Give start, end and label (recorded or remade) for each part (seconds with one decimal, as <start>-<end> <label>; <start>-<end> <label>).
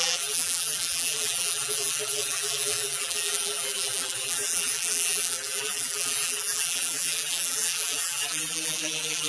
0.0-9.3 remade